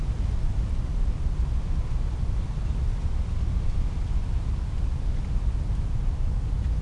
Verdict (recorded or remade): recorded